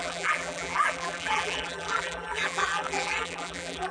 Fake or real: fake